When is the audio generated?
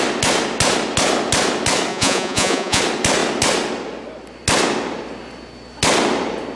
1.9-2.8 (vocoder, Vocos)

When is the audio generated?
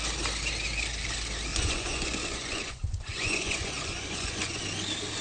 1.5-4.6 (vocoder, Vocos)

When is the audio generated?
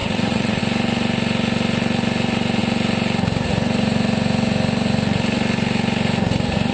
0.0-0.6 (vocoder, Vocos)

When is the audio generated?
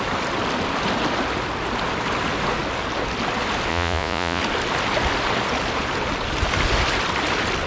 3.7-4.4 (vocoder, Vocos)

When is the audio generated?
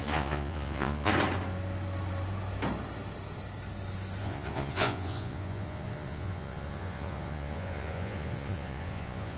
0.0-1.1 (vocoder, Vocos); 4.2-9.4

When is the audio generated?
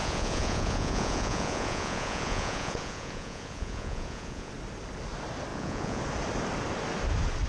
0.0-4.5 (vocoder, Vocos); 5.5-6.0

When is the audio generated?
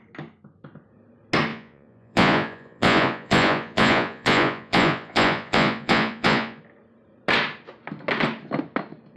1.5-6.6 (vocoder, Vocos)